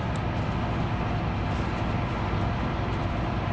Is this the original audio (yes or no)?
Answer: yes